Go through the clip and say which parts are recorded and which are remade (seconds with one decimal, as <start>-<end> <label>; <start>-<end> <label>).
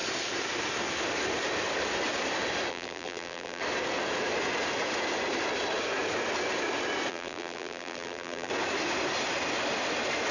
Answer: 0.0-2.7 recorded; 2.7-3.6 remade; 3.6-7.1 recorded; 7.1-8.5 remade; 8.5-10.3 recorded